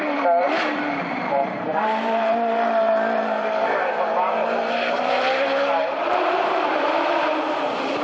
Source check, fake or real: fake